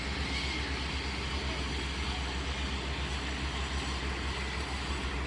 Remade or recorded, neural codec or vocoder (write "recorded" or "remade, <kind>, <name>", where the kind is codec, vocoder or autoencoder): recorded